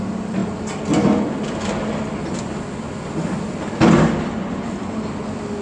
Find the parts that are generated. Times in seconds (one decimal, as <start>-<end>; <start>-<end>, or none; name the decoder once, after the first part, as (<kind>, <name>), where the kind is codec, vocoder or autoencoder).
none